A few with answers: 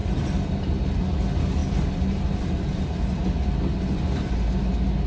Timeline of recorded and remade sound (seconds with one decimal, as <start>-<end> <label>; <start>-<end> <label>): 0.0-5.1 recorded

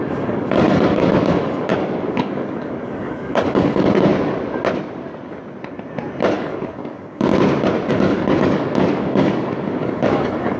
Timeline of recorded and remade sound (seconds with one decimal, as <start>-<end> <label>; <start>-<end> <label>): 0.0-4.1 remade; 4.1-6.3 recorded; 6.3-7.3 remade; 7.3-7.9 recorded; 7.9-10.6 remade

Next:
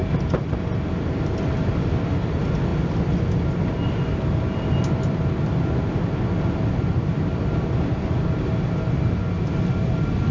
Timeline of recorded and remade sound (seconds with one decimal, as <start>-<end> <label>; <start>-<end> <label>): 0.0-10.3 recorded

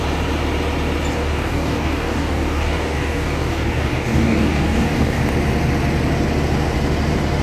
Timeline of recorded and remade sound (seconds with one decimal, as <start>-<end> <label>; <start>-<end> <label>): 0.0-1.1 recorded; 1.1-5.2 remade; 5.2-7.4 recorded

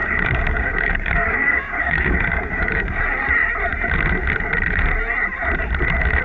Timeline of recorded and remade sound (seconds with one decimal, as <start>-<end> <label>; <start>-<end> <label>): 0.0-3.0 remade; 3.0-6.2 recorded